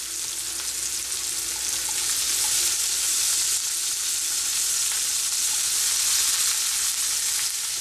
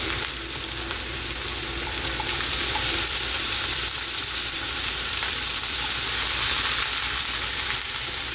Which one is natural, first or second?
first